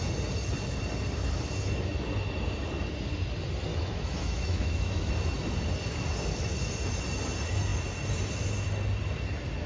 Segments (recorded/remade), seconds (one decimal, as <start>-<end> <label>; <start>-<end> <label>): 0.0-3.7 recorded; 3.7-5.1 remade; 5.1-9.7 recorded